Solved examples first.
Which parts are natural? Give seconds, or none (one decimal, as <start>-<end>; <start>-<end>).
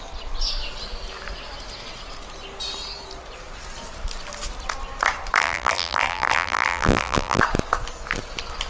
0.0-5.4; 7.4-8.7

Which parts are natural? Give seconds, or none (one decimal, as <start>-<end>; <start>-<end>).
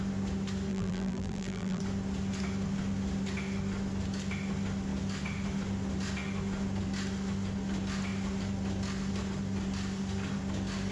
0.0-0.7; 1.8-10.9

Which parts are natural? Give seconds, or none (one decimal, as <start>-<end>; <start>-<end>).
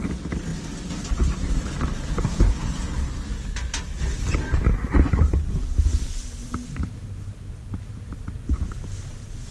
0.0-6.4; 7.1-9.5